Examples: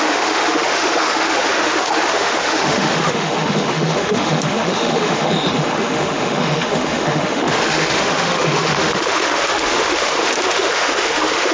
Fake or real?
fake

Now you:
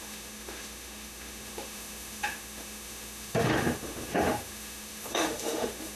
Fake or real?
fake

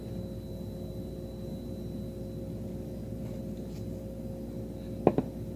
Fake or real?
real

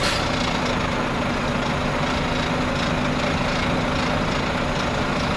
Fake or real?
real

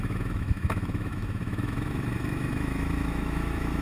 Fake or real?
fake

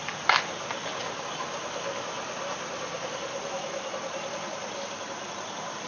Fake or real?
real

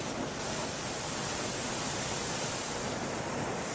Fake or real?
real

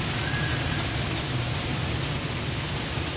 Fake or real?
real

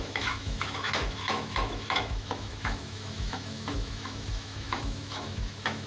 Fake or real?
fake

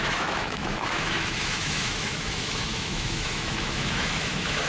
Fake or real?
fake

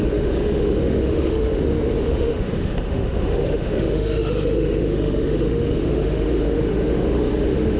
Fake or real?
fake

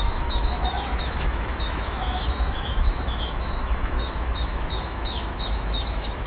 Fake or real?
fake